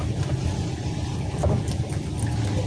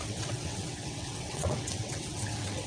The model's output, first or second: second